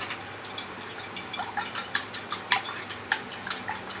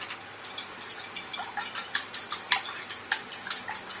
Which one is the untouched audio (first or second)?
second